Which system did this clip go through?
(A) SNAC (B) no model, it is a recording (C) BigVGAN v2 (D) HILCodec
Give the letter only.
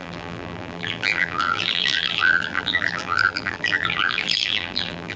C